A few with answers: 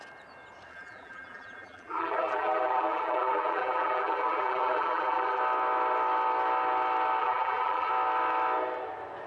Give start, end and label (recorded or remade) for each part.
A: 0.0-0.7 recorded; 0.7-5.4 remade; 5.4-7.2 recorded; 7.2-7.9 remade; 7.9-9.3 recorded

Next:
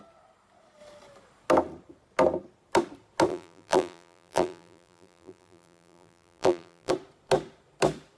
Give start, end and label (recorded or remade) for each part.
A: 0.0-3.3 recorded; 3.3-6.9 remade; 6.9-8.2 recorded

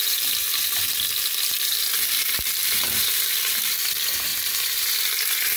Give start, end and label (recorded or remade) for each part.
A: 0.0-2.6 recorded; 2.6-3.3 remade; 3.3-4.3 recorded; 4.3-5.0 remade; 5.0-5.6 recorded

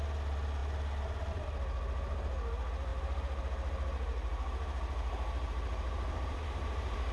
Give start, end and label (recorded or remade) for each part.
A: 0.0-2.9 recorded; 2.9-7.1 remade

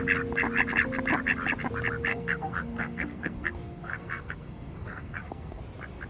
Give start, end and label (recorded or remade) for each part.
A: 0.0-2.1 recorded; 2.1-5.6 remade; 5.6-6.1 recorded

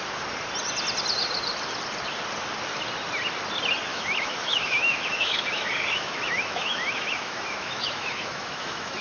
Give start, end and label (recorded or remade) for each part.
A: 0.0-3.9 recorded; 3.9-9.0 remade